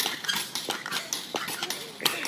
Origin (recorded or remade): recorded